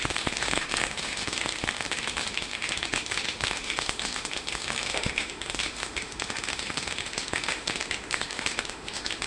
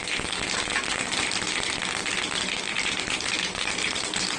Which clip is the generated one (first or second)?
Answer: first